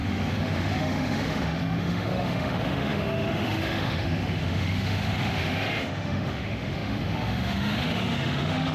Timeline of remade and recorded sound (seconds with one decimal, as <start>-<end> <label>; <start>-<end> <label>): 0.0-8.7 remade